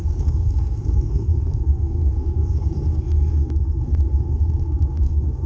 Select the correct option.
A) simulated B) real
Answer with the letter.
A